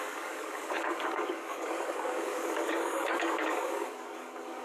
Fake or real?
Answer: fake